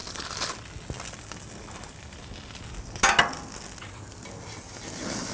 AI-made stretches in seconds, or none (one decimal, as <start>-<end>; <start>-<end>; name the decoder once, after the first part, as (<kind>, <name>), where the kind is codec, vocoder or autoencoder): none